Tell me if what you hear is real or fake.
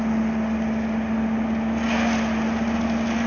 real